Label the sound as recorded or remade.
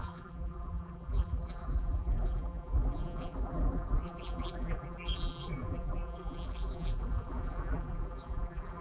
remade